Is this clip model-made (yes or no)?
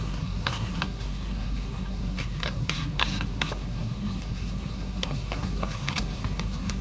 yes